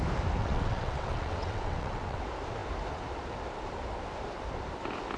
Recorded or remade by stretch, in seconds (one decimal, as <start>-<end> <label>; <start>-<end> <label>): 0.0-0.4 recorded; 0.4-2.2 remade; 2.2-5.2 recorded